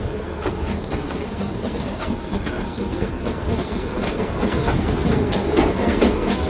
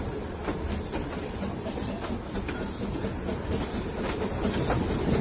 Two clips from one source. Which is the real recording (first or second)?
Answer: second